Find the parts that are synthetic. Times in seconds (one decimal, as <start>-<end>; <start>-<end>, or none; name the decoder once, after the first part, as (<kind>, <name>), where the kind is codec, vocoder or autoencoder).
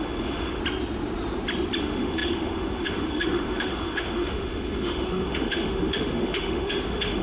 0.0-0.6 (autoencoder, DAC-VAE); 1.8-7.2